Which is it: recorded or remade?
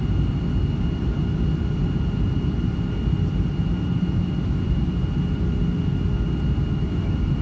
recorded